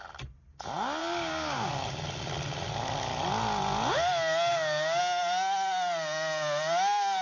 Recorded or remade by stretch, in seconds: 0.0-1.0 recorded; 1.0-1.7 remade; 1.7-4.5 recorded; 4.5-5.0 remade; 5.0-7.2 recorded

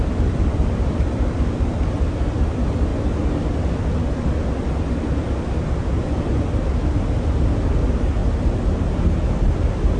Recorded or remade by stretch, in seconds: 0.0-10.0 recorded

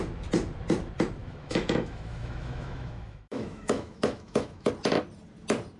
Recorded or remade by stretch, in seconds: 0.0-1.2 recorded; 1.2-4.7 remade; 4.7-5.8 recorded

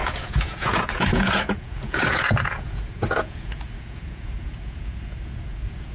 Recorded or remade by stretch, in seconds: 0.0-5.9 remade

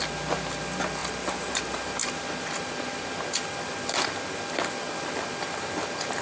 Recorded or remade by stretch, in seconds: 0.0-6.2 recorded

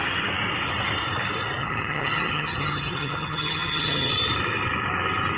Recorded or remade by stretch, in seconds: 0.0-1.6 recorded; 1.6-4.1 remade; 4.1-5.4 recorded